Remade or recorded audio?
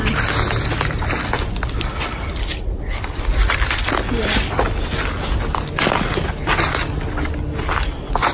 recorded